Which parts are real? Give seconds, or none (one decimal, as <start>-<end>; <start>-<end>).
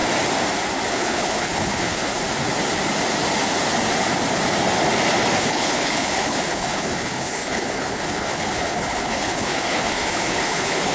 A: 0.0-0.9; 2.1-5.4